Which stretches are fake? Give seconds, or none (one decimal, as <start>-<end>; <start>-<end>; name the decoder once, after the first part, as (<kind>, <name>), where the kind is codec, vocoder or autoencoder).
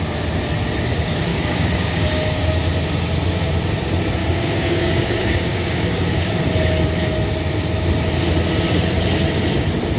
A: 1.3-2.4 (codec, DAC); 4.2-6.4